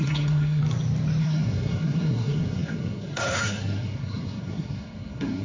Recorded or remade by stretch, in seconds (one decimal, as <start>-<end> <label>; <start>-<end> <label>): 0.0-0.6 remade; 0.6-1.2 recorded; 1.2-5.4 remade